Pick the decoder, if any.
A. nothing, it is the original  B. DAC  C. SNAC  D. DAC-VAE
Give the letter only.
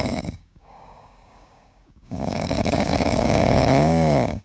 B